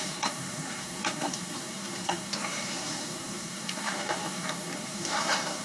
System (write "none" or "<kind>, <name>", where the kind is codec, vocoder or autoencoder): codec, SNAC